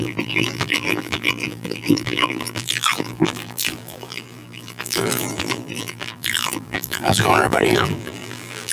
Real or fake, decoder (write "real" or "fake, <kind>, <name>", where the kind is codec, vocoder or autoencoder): fake, vocoder, BigVGAN v2